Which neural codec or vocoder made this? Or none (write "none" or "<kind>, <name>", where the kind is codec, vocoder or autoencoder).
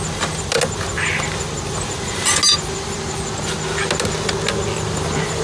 none